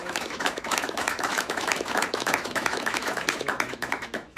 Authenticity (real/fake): fake